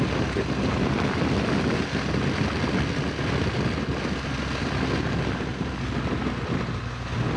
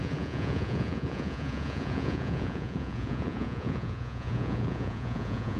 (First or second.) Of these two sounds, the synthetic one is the second